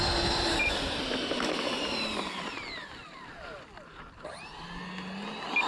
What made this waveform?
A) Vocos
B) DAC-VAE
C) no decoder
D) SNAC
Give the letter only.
C